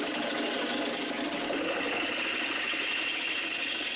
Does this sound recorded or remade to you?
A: recorded